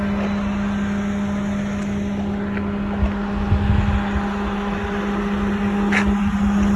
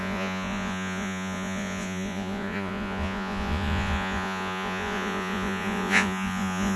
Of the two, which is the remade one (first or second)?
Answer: second